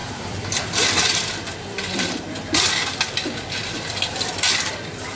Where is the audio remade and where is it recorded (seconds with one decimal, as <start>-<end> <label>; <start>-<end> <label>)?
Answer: 0.0-2.2 remade; 2.2-3.6 recorded; 3.6-4.3 remade; 4.3-5.2 recorded